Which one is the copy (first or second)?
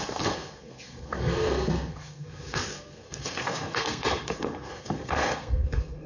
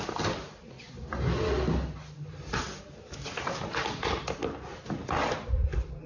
first